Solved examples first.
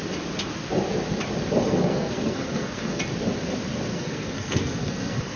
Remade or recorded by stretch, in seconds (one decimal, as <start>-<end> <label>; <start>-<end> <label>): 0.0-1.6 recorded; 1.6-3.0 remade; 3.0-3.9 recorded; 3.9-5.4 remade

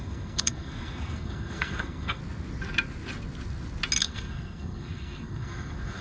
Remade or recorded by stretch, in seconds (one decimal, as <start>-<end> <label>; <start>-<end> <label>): 0.0-2.2 remade; 2.2-4.0 recorded; 4.0-6.0 remade

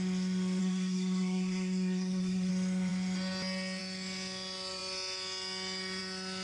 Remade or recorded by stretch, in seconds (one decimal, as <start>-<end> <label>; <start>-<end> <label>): 0.0-0.6 recorded; 0.6-2.5 remade; 2.5-6.4 recorded

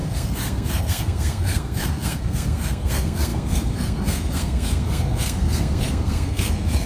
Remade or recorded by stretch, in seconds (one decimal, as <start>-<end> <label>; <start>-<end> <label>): 0.0-6.9 remade